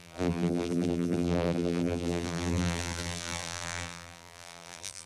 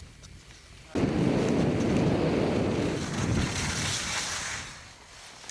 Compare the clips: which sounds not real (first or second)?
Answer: first